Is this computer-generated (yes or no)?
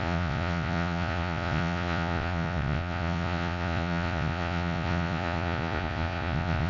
yes